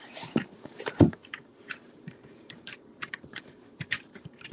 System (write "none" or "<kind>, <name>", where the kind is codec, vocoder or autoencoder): vocoder, BigVGAN v2